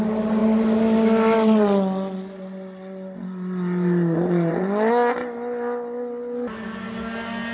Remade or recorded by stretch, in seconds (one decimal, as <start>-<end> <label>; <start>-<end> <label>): 0.0-7.5 recorded